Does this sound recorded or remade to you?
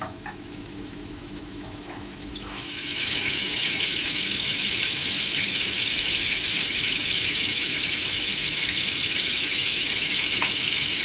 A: remade